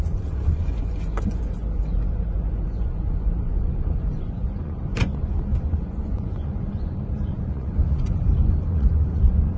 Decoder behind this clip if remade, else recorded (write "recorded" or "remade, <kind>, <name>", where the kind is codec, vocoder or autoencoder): remade, vocoder, Vocos